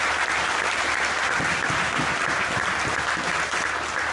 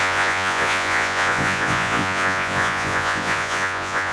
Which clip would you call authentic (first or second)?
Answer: first